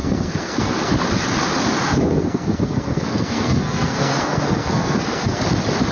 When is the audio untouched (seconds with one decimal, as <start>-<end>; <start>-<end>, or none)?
0.9-1.9; 5.4-5.9